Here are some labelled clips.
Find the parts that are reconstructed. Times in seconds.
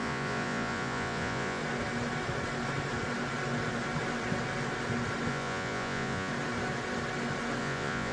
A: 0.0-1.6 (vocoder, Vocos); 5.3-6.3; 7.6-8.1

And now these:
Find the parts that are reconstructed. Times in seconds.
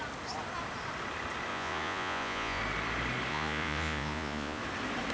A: 1.5-2.6 (vocoder, Vocos); 3.3-4.6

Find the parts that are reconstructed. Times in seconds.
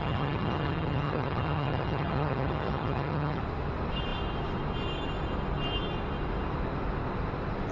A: 0.0-3.4 (vocoder, HiFi-GAN)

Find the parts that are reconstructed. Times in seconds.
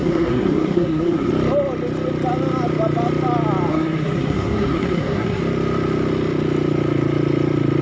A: 0.0-1.3 (codec, SNAC); 3.7-5.4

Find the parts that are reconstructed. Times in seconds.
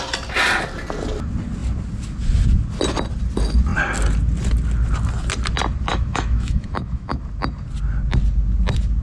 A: 5.9-7.2 (autoencoder, DAC-VAE)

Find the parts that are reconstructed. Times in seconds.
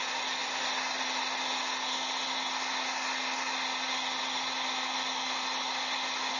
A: none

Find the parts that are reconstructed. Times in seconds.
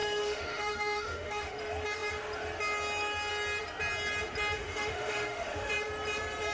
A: 0.0-1.6 (autoencoder, DAC-VAE); 4.6-5.7